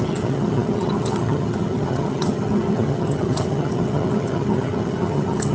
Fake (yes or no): yes